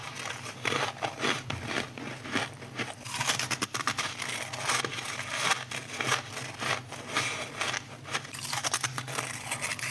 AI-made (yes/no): no